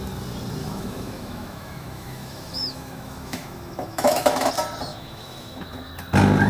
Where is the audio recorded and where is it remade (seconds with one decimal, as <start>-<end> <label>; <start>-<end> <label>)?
0.0-0.6 recorded; 0.6-4.5 remade; 4.5-4.9 recorded; 4.9-5.9 remade; 5.9-6.5 recorded